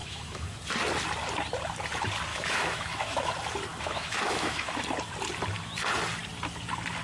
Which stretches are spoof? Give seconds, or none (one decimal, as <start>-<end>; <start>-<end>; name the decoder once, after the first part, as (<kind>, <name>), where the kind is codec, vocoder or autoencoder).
0.0-0.6 (autoencoder, DAC-VAE); 2.3-3.3; 3.7-4.7